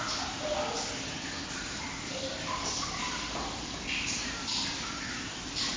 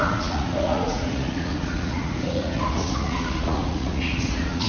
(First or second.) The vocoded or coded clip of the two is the second